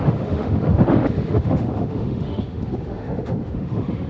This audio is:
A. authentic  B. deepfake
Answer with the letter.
B